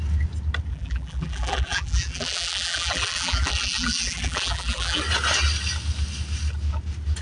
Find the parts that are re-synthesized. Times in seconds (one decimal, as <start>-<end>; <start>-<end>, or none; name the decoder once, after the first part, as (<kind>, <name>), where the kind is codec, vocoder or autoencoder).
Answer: 0.7-5.0 (vocoder, BigVGAN v2)